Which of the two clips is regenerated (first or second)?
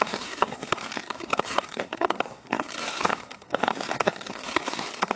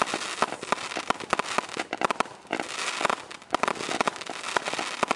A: first